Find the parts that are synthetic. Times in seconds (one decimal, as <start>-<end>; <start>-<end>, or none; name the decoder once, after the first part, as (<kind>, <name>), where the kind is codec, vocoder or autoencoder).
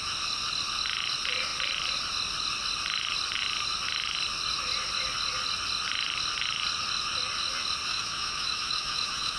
7.9-9.4 (autoencoder, DAC-VAE)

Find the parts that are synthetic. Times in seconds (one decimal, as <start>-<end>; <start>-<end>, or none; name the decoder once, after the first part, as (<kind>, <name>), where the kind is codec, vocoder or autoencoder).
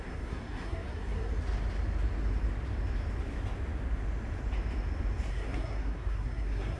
0.0-1.3 (codec, SNAC); 5.3-6.8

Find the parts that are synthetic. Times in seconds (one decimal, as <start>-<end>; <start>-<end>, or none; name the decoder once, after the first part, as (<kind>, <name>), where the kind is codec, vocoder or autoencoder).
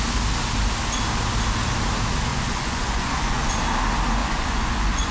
2.3-3.5 (vocoder, Vocos); 4.2-5.1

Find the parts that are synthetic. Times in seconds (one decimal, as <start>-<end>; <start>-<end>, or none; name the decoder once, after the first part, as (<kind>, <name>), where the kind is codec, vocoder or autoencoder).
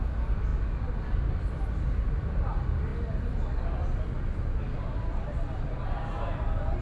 none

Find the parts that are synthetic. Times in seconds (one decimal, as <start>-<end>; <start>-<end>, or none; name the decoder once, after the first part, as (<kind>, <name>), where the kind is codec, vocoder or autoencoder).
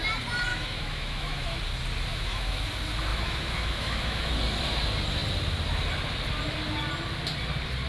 0.5-1.6 (autoencoder, DAC-VAE); 2.1-2.7; 3.1-4.3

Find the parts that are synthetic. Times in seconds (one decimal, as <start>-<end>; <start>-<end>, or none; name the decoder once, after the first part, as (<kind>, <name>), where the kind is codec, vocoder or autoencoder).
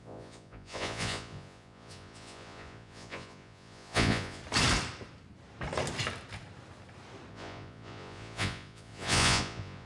0.0-4.4 (vocoder, Vocos); 7.3-9.9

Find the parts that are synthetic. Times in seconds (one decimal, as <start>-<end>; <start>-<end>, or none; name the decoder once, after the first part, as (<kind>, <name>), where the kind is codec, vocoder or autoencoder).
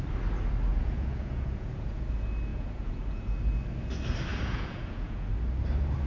0.7-2.1 (vocoder, Vocos); 2.5-3.2; 4.3-5.3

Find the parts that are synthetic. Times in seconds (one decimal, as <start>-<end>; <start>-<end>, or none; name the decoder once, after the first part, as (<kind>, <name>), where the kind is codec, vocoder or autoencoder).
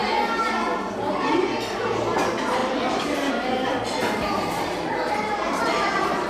1.8-6.3 (vocoder, BigVGAN v2)